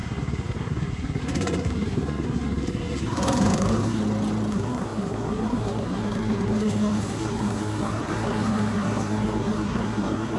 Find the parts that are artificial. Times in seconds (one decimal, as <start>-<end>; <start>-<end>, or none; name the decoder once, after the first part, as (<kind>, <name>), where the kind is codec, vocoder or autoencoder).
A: 0.0-4.0 (codec, SNAC); 4.5-10.4